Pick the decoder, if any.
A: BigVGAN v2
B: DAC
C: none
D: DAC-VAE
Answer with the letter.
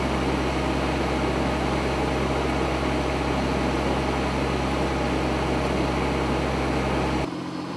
C